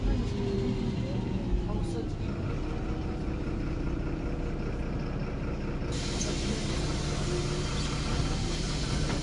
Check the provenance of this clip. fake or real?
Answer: real